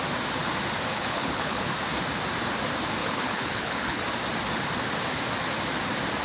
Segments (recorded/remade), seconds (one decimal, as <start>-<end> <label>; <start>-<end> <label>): 0.0-0.9 recorded; 0.9-1.7 remade; 1.7-3.0 recorded; 3.0-4.0 remade; 4.0-6.2 recorded